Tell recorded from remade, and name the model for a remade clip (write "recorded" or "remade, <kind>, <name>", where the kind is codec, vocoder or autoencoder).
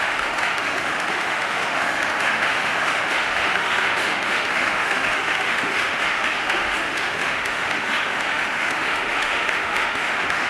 remade, autoencoder, DAC-VAE